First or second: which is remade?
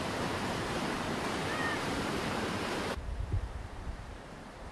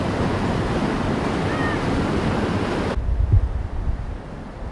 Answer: first